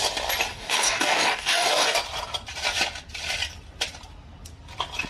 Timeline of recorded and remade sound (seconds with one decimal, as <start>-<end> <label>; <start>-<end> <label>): 0.0-0.5 recorded; 0.5-2.0 remade; 2.0-5.1 recorded